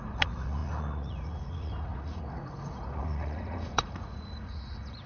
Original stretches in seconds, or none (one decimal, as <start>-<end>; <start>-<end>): none